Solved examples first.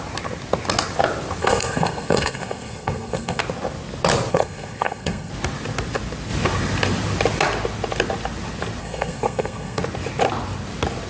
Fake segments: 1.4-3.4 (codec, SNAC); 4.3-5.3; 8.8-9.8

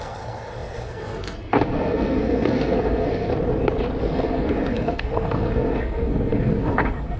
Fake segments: 0.0-3.3 (codec, SNAC); 4.0-7.2

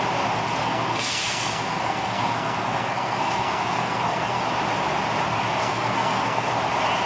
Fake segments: 0.6-4.4 (codec, SNAC); 5.6-6.5

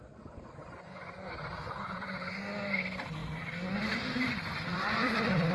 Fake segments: 4.7-5.5 (vocoder, BigVGAN v2)

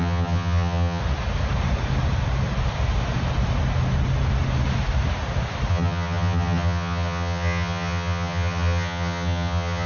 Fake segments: 0.0-1.0 (vocoder, HiFi-GAN); 5.7-9.9

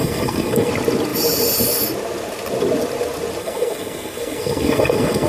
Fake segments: 0.0-0.7 (codec, SNAC); 3.4-5.3

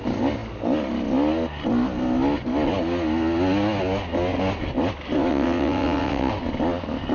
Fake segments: 5.3-6.3 (vocoder, WaveNeXt)

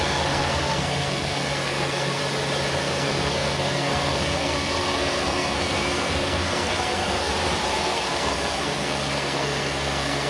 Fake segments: 0.0-2.2 (codec, SNAC); 2.8-7.3; 7.8-10.3